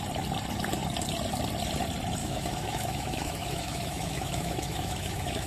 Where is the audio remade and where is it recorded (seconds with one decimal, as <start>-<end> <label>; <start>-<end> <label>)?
0.0-2.2 recorded; 2.2-5.5 remade